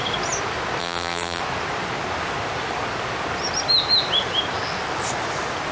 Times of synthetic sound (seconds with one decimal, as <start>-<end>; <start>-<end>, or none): 0.8-1.4